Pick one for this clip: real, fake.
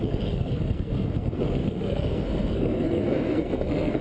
fake